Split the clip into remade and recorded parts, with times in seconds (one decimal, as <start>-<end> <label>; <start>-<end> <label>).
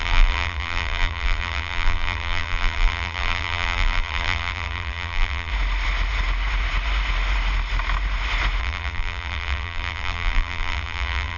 0.0-5.5 remade; 5.5-8.6 recorded; 8.6-11.4 remade